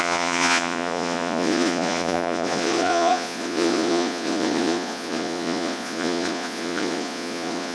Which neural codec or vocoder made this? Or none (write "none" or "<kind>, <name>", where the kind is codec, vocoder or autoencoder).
vocoder, Vocos